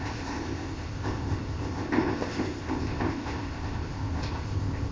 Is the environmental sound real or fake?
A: fake